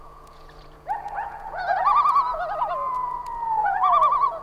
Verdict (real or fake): fake